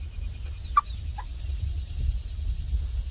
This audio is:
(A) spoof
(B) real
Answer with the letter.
B